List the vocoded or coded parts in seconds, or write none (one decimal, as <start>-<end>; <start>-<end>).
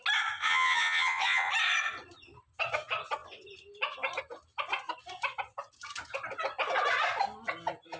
0.4-1.5